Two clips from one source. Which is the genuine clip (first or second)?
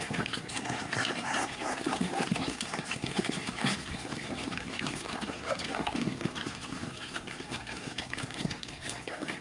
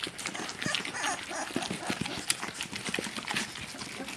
second